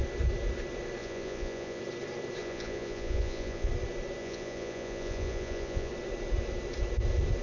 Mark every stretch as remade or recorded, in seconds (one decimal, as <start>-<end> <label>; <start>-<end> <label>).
0.0-1.0 recorded; 1.0-1.8 remade; 1.8-2.4 recorded; 2.4-3.7 remade; 3.7-4.2 recorded; 4.2-5.9 remade; 5.9-7.4 recorded